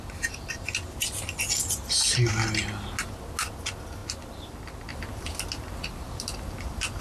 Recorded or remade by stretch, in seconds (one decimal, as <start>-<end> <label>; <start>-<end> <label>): 0.0-7.0 recorded